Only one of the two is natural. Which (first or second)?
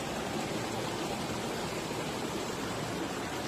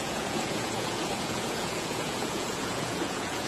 first